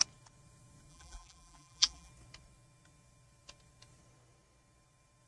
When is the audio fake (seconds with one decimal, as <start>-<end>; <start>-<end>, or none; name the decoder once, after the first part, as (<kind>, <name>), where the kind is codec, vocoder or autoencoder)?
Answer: 0.9-2.1 (vocoder, BigVGAN v2)